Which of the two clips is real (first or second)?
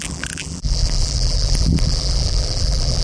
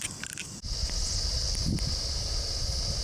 second